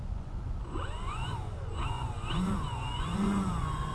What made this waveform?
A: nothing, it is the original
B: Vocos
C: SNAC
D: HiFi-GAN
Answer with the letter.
B